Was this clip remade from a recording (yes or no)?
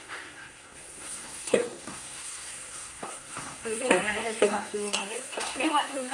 yes